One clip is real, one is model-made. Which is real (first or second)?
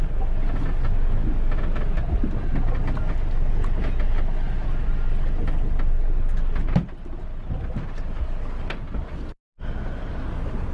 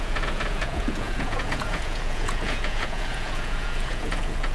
first